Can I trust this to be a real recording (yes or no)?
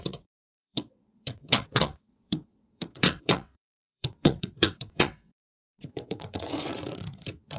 no